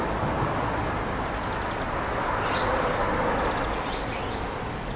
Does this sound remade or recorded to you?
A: recorded